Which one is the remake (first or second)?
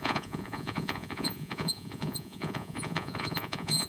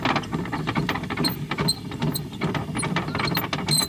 first